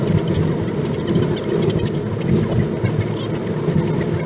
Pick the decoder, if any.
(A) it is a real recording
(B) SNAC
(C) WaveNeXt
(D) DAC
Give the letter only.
A